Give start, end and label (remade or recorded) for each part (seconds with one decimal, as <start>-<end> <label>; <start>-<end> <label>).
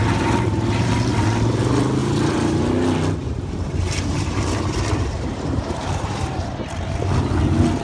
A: 0.0-0.9 remade; 0.9-2.0 recorded; 2.0-2.6 remade; 2.6-3.2 recorded; 3.2-6.5 remade; 6.5-7.8 recorded